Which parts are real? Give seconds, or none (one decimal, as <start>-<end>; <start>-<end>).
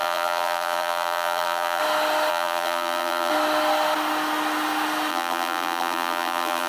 1.8-2.3; 3.3-5.1